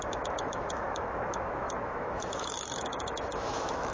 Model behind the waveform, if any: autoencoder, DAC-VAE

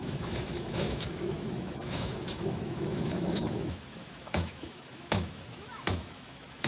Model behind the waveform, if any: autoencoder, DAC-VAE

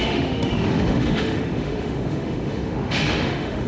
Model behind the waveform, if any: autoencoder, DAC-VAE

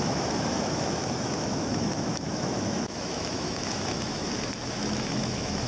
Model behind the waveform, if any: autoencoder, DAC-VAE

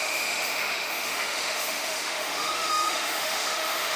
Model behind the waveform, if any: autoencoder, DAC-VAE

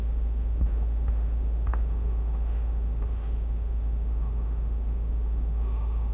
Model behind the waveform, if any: autoencoder, DAC-VAE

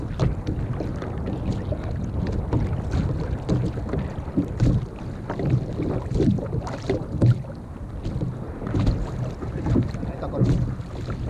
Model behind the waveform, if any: none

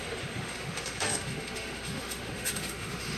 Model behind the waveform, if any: autoencoder, DAC-VAE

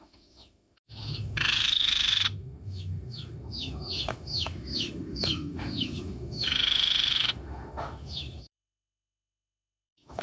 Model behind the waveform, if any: autoencoder, DAC-VAE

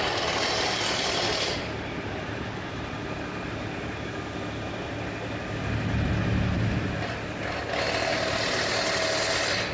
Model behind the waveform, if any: none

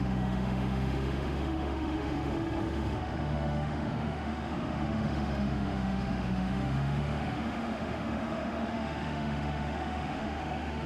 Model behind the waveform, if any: autoencoder, DAC-VAE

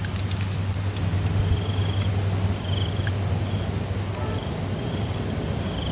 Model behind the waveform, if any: none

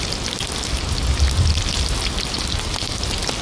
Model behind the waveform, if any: none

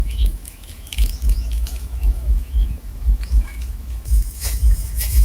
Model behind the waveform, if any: autoencoder, DAC-VAE